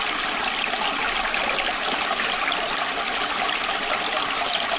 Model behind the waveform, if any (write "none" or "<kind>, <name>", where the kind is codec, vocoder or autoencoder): none